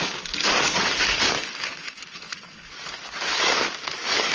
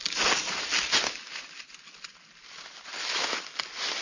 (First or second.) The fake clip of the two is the first